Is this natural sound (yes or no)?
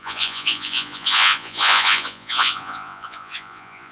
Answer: no